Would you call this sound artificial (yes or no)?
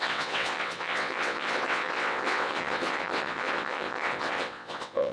yes